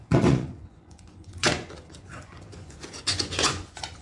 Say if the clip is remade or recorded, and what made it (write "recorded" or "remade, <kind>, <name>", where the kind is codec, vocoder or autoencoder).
remade, vocoder, Vocos